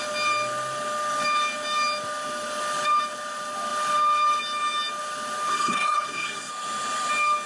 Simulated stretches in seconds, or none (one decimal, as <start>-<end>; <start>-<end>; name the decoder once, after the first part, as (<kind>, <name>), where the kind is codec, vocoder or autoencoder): 5.5-6.5 (codec, SNAC)